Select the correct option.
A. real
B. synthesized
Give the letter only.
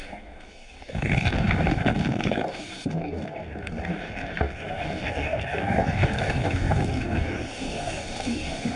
B